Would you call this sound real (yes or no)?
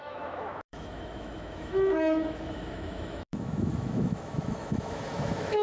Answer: no